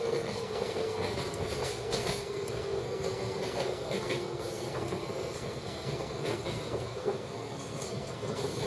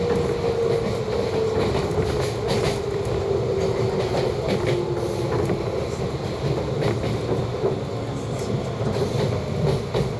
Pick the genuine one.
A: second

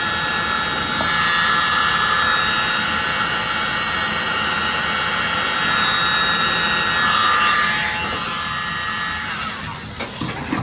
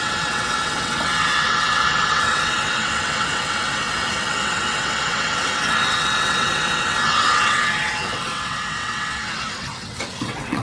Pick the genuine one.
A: first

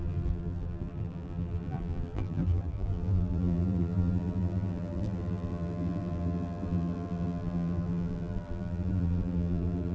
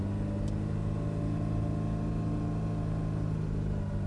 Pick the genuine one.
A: second